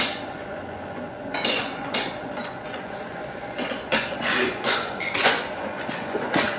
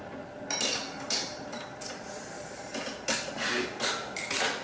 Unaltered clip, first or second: second